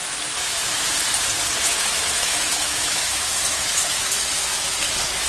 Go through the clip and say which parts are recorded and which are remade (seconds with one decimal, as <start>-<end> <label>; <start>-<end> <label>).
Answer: 0.0-0.9 remade; 0.9-1.7 recorded; 1.7-4.7 remade; 4.7-5.3 recorded

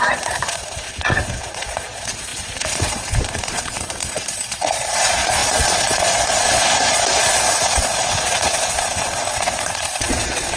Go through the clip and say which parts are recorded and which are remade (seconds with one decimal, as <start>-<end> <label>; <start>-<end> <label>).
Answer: 0.0-10.6 remade

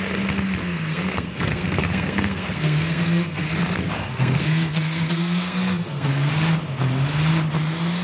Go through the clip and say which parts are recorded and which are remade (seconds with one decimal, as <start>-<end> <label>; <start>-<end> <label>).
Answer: 0.0-0.6 recorded; 0.6-3.4 remade; 3.4-4.0 recorded; 4.0-6.3 remade; 6.3-8.0 recorded

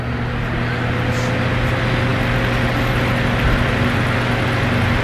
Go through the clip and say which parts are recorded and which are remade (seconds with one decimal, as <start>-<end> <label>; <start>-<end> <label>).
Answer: 0.0-5.0 recorded

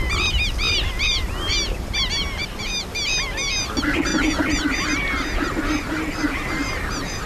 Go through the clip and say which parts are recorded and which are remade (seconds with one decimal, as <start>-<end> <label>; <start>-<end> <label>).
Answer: 0.0-2.4 recorded; 2.4-2.9 remade; 2.9-4.1 recorded; 4.1-7.3 remade

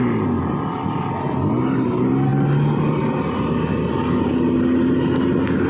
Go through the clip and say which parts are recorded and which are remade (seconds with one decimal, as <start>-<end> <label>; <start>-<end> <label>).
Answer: 0.0-5.7 recorded

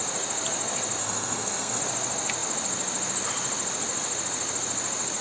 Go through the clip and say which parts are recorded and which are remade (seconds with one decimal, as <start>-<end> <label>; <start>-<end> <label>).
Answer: 0.0-1.0 recorded; 1.0-1.8 remade; 1.8-5.2 recorded